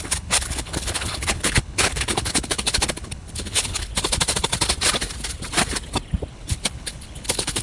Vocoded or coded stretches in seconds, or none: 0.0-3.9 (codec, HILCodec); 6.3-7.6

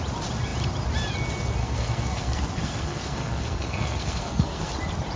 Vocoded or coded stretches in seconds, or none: 1.6-4.7 (codec, SNAC)